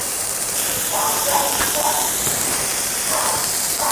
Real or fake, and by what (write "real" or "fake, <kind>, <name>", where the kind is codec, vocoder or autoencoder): fake, vocoder, BigVGAN v2